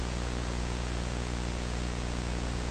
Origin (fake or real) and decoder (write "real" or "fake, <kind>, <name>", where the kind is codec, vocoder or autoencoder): fake, vocoder, Vocos